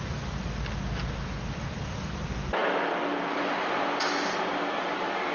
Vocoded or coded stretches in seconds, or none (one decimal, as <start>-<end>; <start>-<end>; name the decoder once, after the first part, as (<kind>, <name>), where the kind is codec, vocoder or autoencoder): none